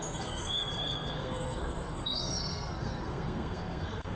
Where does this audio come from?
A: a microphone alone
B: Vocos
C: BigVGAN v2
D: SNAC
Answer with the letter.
D